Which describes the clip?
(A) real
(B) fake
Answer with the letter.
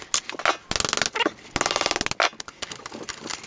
A